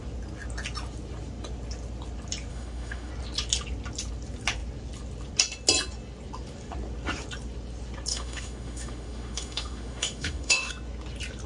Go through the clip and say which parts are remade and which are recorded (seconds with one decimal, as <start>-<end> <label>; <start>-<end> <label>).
0.0-2.5 recorded; 2.5-3.1 remade; 3.1-8.1 recorded; 8.1-10.7 remade; 10.7-11.5 recorded